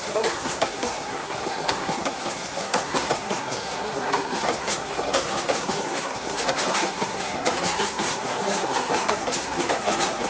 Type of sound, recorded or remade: remade